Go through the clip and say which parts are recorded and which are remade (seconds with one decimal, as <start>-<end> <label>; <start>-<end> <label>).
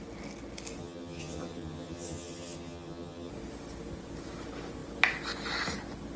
0.0-0.8 recorded; 0.8-3.3 remade; 3.3-6.2 recorded